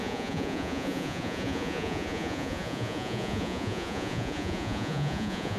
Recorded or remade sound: remade